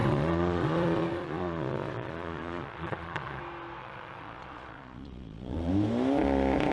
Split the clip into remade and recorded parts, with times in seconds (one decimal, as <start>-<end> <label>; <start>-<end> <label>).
0.0-3.4 remade; 3.4-3.8 recorded; 3.8-5.7 remade; 5.7-6.7 recorded